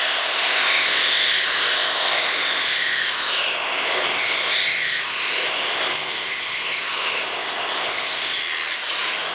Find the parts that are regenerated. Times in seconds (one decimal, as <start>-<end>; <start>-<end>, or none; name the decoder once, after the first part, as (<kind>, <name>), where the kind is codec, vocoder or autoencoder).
0.0-8.4 (codec, ZipCodec)

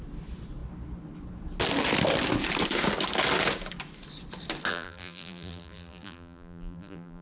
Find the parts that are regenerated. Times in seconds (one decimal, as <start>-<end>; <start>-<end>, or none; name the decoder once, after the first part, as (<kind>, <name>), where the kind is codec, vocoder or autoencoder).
4.7-7.2 (vocoder, BigVGAN v2)

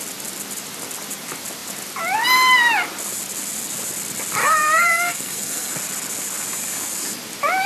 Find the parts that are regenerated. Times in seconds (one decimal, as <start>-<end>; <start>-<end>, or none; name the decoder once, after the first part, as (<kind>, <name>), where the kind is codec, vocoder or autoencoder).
4.4-5.7 (codec, SNAC)

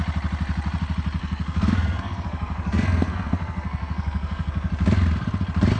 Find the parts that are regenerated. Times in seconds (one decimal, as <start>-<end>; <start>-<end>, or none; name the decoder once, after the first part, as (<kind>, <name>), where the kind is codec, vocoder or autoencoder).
1.2-4.7 (codec, SNAC)

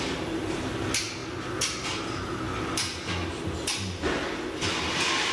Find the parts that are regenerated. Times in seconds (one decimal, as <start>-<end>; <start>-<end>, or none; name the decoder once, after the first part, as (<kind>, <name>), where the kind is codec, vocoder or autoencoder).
none

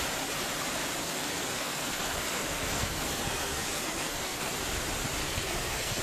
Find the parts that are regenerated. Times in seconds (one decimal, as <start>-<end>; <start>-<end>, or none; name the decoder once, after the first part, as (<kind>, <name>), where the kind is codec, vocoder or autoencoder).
1.0-4.5 (codec, SNAC); 5.2-6.0

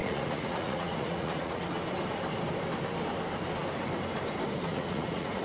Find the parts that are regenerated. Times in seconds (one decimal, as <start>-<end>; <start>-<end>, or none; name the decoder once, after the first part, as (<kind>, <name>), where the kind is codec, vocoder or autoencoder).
0.0-1.6 (vocoder, Vocos); 4.7-5.4

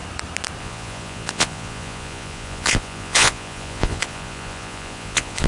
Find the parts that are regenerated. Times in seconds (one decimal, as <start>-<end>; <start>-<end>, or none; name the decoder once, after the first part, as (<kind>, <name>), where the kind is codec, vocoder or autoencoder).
0.6-5.5 (vocoder, Vocos)